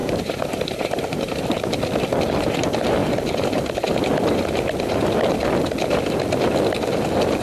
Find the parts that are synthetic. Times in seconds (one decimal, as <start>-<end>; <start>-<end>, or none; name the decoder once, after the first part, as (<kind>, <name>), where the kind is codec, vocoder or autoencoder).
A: 0.0-2.0 (vocoder, BigVGAN v2)

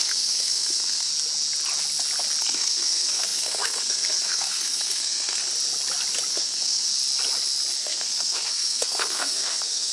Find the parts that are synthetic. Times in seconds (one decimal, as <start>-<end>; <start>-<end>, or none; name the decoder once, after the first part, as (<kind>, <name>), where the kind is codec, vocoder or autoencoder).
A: 0.0-1.1 (codec, SNAC); 2.4-5.4; 6.3-6.9; 7.8-9.9

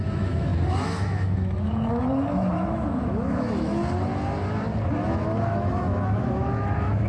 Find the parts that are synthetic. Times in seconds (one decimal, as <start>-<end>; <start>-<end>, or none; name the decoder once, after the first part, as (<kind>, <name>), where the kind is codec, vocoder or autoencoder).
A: 0.0-3.8 (autoencoder, DAC-VAE); 4.9-7.1